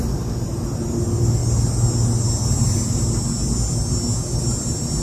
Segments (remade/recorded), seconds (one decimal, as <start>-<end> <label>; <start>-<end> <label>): 0.0-5.0 recorded

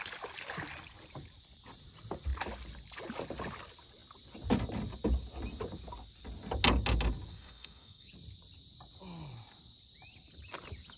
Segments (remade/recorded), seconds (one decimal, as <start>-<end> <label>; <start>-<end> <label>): 0.0-7.3 recorded; 7.3-8.1 remade; 8.1-11.0 recorded

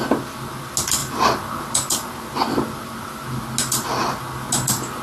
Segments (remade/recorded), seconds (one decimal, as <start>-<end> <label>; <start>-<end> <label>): 0.0-5.0 recorded

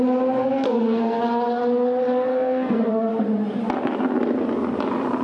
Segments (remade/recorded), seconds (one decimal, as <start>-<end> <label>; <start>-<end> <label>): 0.0-0.4 recorded; 0.4-1.2 remade; 1.2-2.3 recorded; 2.3-3.1 remade; 3.1-5.2 recorded

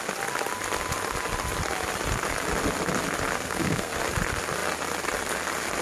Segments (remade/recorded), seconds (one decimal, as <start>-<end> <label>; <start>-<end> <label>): 0.0-3.3 recorded; 3.3-3.9 remade; 3.9-5.8 recorded

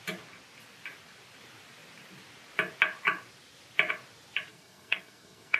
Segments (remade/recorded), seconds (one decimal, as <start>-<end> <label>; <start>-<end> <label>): 0.0-4.5 recorded; 4.5-5.6 remade

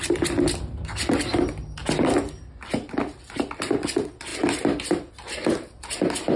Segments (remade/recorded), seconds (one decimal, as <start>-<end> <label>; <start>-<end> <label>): 0.0-6.4 recorded